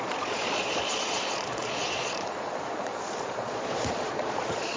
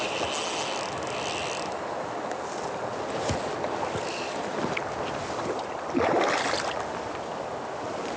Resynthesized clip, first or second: first